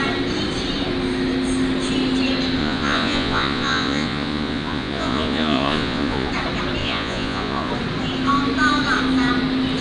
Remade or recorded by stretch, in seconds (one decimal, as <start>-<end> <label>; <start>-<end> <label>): 0.0-2.6 recorded; 2.6-6.3 remade; 6.3-6.8 recorded; 6.8-7.7 remade; 7.7-9.8 recorded

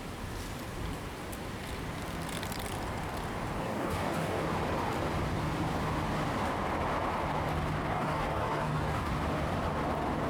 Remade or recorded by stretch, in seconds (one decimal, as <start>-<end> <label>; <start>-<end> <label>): 0.0-3.6 recorded; 3.6-4.4 remade; 4.4-7.9 recorded; 7.9-9.1 remade; 9.1-10.3 recorded

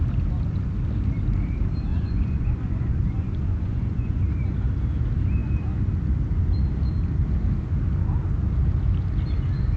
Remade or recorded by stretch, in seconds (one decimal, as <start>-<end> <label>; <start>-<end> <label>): 0.0-1.9 recorded; 1.9-4.2 remade; 4.2-9.8 recorded

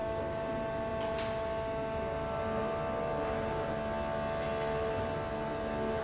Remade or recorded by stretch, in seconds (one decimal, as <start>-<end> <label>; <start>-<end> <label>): 0.0-0.5 remade; 0.5-6.0 recorded

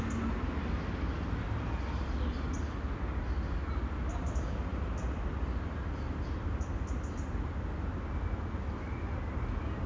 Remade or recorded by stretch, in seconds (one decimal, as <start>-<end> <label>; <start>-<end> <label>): 0.0-9.9 recorded

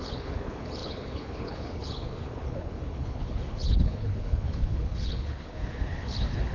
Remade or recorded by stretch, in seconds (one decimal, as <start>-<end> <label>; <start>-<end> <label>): 0.0-6.5 remade

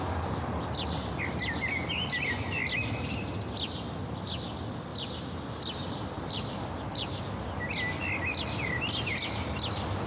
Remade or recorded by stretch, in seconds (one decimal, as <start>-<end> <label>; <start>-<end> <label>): 0.0-4.9 recorded; 4.9-7.2 remade; 7.2-10.1 recorded